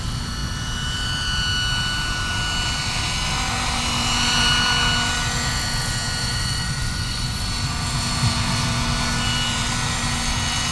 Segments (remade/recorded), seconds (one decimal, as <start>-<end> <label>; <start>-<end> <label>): 0.0-6.2 recorded; 6.2-7.4 remade; 7.4-10.7 recorded